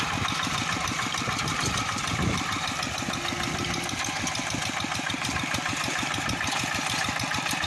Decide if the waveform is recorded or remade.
remade